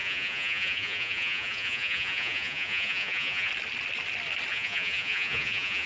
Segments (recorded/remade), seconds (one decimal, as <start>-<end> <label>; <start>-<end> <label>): 0.0-3.5 remade; 3.5-4.5 recorded; 4.5-5.9 remade